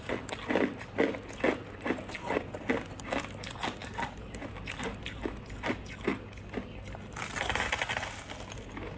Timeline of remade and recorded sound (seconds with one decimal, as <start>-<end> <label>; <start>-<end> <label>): 0.0-9.0 recorded